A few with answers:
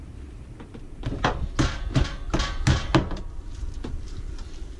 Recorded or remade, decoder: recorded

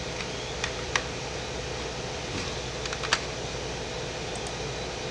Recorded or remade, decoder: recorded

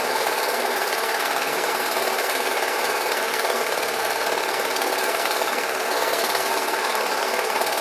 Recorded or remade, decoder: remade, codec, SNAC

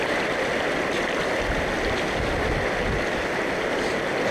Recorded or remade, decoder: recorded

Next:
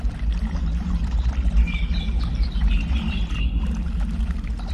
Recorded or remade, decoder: recorded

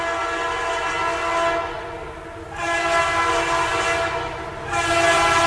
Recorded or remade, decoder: recorded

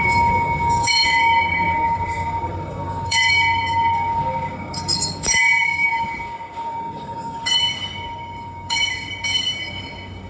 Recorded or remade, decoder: remade, codec, DAC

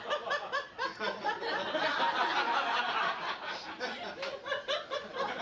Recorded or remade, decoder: recorded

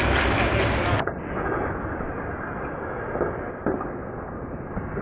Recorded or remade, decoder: recorded